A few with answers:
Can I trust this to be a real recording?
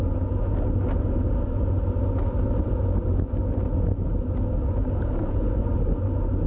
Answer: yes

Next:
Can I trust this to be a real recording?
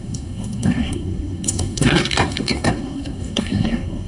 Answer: no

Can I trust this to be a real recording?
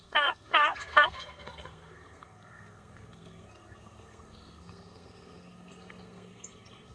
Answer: no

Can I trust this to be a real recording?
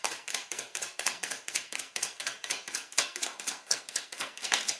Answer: no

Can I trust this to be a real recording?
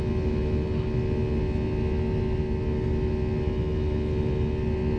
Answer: yes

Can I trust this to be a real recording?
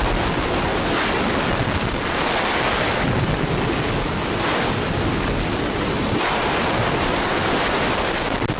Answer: yes